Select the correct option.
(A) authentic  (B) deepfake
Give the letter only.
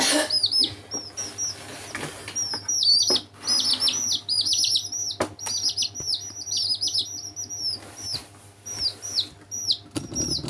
A